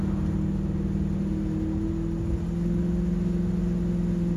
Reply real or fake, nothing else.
real